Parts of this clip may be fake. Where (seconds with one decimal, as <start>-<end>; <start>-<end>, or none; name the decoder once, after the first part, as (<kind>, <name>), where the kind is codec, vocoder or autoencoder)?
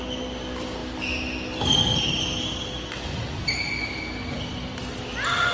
none